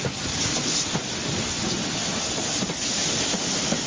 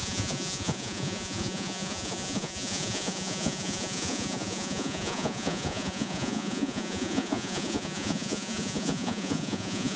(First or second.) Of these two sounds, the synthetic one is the second